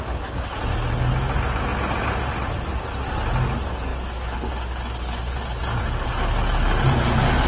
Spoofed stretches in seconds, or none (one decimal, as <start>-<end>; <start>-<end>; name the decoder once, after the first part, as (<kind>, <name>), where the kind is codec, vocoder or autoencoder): 5.5-6.1 (vocoder, Vocos)